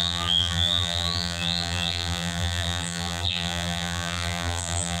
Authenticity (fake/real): fake